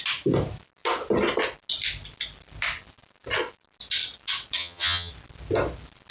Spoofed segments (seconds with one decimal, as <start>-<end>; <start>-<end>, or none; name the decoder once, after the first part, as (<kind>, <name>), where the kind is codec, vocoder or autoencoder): 4.6-5.1 (vocoder, HiFi-GAN)